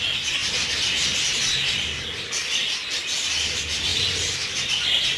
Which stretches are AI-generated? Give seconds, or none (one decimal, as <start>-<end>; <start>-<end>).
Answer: 0.4-1.2